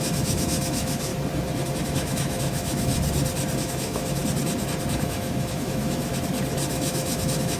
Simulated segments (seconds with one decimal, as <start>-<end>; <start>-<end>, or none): 0.0-1.1; 1.8-2.9; 3.6-4.2; 4.9-6.1; 6.7-7.6